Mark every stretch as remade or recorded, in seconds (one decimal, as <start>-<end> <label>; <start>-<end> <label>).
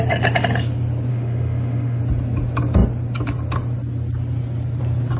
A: 0.0-1.1 recorded; 1.1-2.0 remade; 2.0-5.2 recorded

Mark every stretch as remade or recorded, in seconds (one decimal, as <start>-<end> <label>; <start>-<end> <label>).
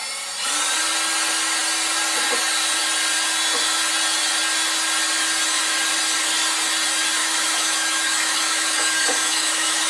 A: 0.0-7.2 recorded; 7.2-9.9 remade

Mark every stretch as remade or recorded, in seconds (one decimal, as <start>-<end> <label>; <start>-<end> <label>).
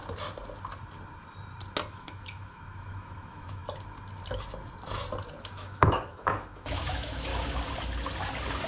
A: 0.0-1.9 recorded; 1.9-3.6 remade; 3.6-5.4 recorded; 5.4-7.3 remade; 7.3-8.7 recorded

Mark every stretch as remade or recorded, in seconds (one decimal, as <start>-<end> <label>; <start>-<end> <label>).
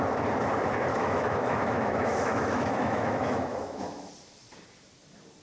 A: 0.0-0.9 recorded; 0.9-4.1 remade; 4.1-5.4 recorded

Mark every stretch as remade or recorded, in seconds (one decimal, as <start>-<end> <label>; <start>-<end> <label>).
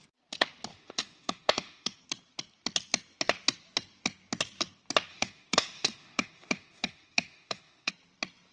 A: 0.0-0.7 recorded; 0.7-2.0 remade; 2.0-5.1 recorded; 5.1-7.9 remade; 7.9-8.5 recorded